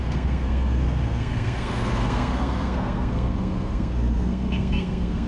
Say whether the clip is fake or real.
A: fake